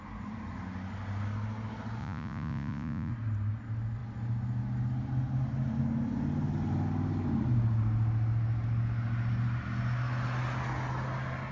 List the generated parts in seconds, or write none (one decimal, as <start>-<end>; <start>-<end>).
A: 2.0-3.1